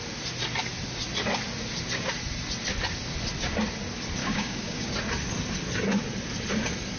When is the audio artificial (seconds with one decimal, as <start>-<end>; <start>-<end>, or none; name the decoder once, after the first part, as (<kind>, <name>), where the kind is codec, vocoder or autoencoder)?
4.2-4.9 (codec, DAC)